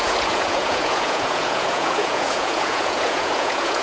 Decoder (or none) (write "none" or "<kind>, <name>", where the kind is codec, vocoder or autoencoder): vocoder, Vocos